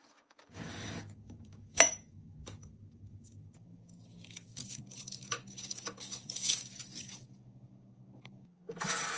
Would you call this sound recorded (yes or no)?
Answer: no